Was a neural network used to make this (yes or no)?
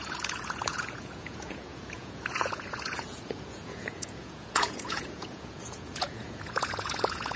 yes